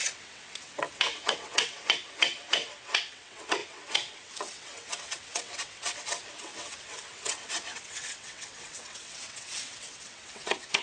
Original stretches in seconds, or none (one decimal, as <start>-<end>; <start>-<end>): none